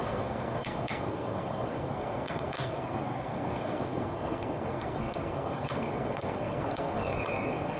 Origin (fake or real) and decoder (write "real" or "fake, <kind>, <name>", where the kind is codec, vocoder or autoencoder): fake, codec, SNAC